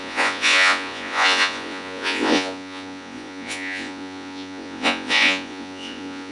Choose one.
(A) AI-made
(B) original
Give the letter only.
A